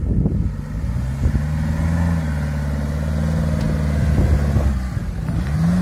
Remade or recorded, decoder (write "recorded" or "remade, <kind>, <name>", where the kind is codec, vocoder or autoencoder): recorded